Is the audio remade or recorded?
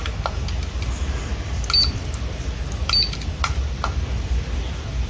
remade